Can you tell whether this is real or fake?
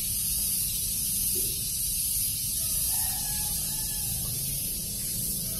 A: fake